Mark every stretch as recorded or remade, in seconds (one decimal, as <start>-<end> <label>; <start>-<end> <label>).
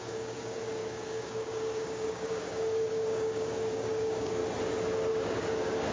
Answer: 0.0-4.4 remade; 4.4-5.1 recorded; 5.1-5.9 remade